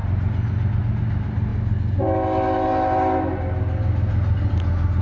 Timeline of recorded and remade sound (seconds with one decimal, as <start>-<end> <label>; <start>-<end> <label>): 0.0-5.0 recorded